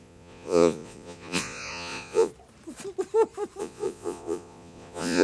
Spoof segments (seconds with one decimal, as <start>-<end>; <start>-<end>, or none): 0.0-2.3; 3.6-5.2